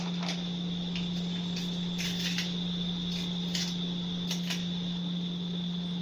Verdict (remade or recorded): recorded